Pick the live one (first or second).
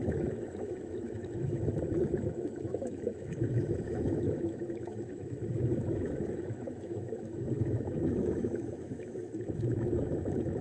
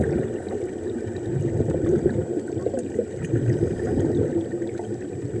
second